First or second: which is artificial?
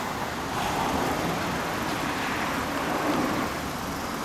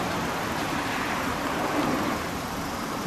second